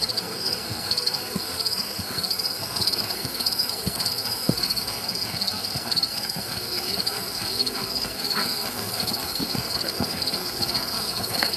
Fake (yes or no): yes